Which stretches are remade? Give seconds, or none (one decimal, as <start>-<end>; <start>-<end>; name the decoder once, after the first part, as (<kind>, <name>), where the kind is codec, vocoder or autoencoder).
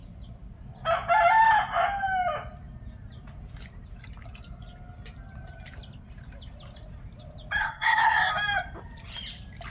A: 7.6-8.3 (codec, SNAC)